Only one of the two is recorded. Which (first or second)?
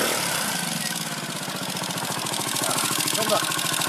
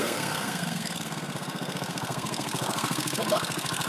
first